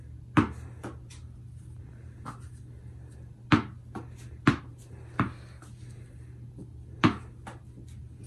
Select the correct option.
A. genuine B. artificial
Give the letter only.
A